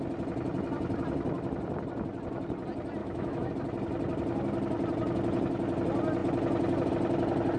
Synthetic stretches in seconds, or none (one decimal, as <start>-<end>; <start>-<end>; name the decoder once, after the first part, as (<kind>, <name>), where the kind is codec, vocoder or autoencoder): 3.0-3.5 (autoencoder, DAC-VAE)